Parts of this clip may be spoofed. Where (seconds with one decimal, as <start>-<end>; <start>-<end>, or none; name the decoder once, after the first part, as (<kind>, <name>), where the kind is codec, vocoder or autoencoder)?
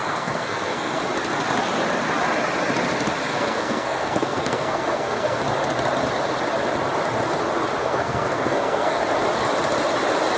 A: 0.0-1.0 (codec, SNAC); 3.3-5.4; 7.8-9.0